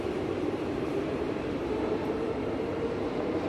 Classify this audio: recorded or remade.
remade